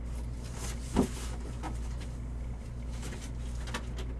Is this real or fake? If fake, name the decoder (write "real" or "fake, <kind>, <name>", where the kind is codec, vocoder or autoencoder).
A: real